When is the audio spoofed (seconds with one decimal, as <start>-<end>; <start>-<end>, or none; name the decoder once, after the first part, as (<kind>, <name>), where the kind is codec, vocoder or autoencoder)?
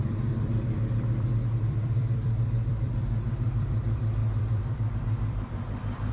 0.0-6.1 (vocoder, BigVGAN v2)